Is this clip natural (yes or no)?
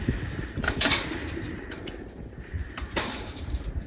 no